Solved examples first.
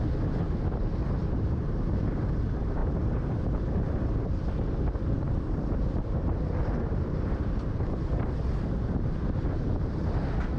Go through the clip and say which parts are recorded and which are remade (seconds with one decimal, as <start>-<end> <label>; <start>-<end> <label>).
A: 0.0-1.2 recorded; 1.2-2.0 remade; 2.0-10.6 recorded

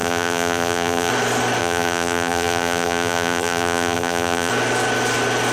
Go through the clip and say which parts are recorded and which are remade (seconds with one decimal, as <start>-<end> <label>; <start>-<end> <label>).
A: 0.0-1.1 remade; 1.1-1.6 recorded; 1.6-4.5 remade; 4.5-5.5 recorded

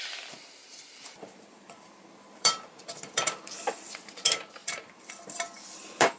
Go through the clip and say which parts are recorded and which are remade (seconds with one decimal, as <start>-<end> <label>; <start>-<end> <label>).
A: 0.0-0.7 recorded; 0.7-4.1 remade; 4.1-4.6 recorded; 4.6-5.1 remade; 5.1-6.2 recorded